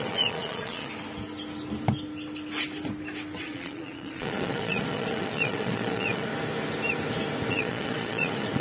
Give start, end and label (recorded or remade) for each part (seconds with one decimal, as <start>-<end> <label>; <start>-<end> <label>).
0.0-0.9 remade; 0.9-3.4 recorded; 3.4-6.3 remade; 6.3-7.5 recorded; 7.5-8.6 remade